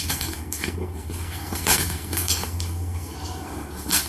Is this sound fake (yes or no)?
yes